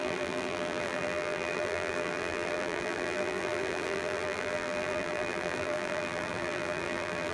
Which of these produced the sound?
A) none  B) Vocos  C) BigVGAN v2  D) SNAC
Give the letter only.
C